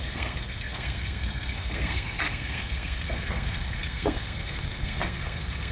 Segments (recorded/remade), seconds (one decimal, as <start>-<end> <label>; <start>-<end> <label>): 0.0-5.7 remade